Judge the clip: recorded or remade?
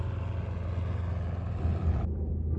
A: recorded